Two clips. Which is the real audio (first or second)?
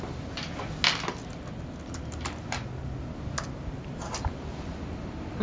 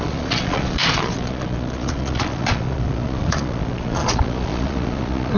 first